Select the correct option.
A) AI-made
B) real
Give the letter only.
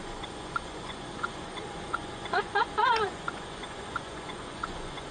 A